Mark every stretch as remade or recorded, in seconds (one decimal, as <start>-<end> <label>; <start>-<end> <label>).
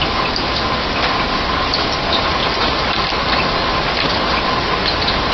0.0-2.4 recorded; 2.4-5.3 remade